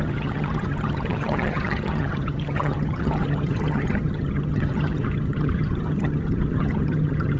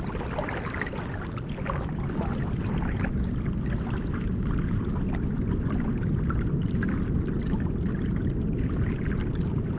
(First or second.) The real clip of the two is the second